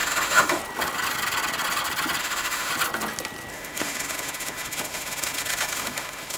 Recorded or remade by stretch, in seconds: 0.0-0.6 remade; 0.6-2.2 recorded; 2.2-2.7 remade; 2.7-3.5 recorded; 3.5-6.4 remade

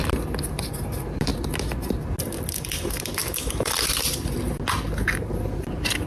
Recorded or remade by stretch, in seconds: 0.0-3.2 recorded; 3.2-3.7 remade; 3.7-6.1 recorded

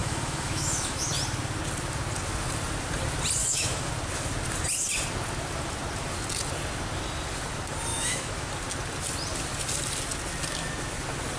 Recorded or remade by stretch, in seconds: 0.0-1.1 remade; 1.1-3.4 recorded; 3.4-3.9 remade; 3.9-7.9 recorded; 7.9-8.5 remade; 8.5-11.4 recorded

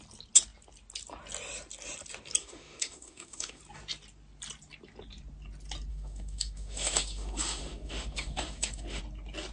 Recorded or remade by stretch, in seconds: 0.0-2.4 recorded; 2.4-3.6 remade; 3.6-5.9 recorded; 5.9-9.0 remade; 9.0-9.5 recorded